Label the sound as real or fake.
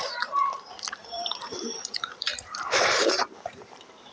fake